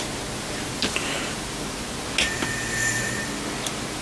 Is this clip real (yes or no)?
yes